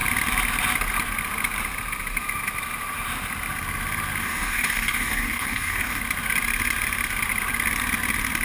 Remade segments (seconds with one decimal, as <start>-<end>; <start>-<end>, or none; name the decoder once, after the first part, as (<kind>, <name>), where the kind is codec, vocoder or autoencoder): 4.2-6.0 (codec, DAC)